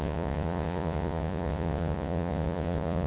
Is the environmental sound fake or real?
fake